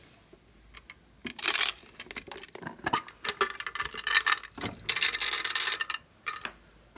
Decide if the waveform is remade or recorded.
recorded